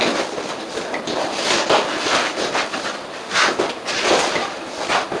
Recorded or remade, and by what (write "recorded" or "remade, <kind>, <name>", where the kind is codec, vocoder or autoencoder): recorded